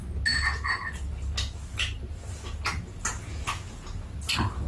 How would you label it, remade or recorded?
recorded